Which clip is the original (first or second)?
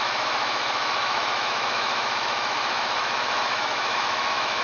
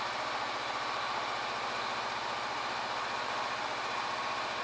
second